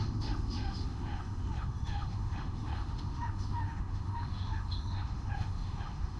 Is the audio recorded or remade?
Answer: remade